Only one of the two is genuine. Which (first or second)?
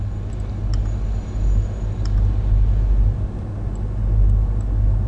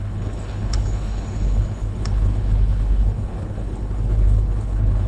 first